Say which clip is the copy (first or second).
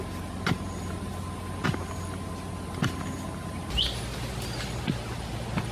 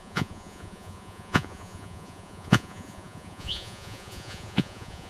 second